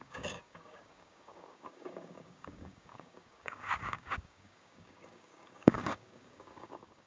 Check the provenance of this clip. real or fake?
fake